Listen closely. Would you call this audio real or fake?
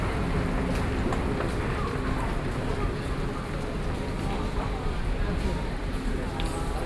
real